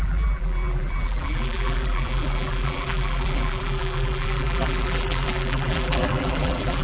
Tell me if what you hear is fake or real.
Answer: fake